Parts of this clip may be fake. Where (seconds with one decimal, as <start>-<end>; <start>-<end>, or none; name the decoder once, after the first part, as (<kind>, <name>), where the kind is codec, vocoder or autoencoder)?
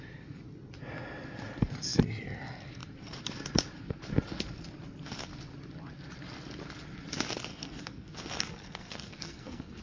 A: 7.5-9.8 (codec, SNAC)